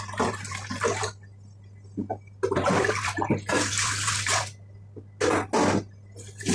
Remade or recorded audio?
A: recorded